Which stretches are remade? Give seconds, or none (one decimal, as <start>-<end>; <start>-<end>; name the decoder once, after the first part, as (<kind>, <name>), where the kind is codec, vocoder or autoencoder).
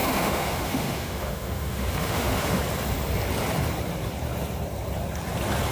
0.0-2.6 (autoencoder, DAC-VAE)